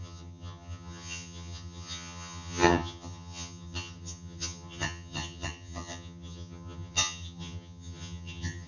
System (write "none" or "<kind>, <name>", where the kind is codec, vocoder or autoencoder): vocoder, HiFi-GAN